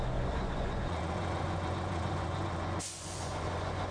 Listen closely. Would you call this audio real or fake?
fake